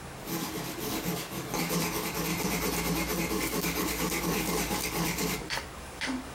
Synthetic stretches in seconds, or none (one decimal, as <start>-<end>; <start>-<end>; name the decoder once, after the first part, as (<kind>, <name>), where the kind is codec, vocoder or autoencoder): 0.0-2.3 (codec, DAC); 3.3-6.3